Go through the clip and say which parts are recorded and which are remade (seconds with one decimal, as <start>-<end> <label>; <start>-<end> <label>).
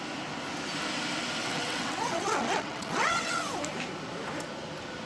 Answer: 0.0-1.4 recorded; 1.4-3.4 remade; 3.4-5.1 recorded